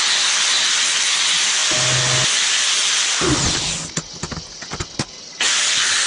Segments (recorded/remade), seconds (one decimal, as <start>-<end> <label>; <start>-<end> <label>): 0.0-6.1 recorded